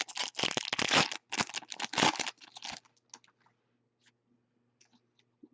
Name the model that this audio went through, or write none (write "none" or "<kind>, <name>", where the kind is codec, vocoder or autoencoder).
none